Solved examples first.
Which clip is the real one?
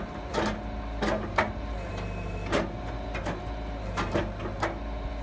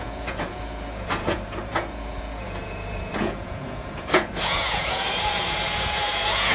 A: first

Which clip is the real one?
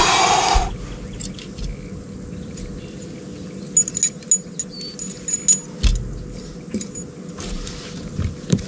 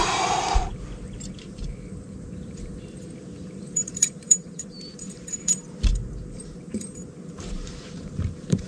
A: first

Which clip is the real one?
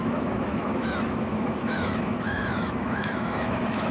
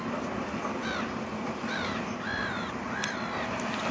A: second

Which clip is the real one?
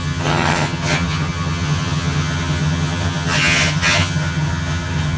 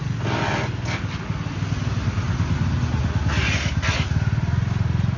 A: second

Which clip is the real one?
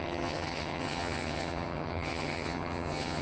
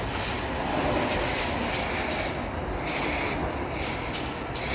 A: second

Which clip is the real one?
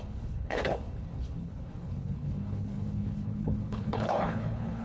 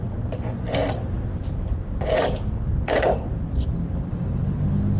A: second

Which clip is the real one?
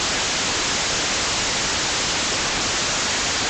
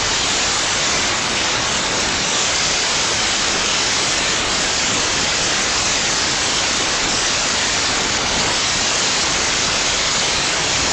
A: first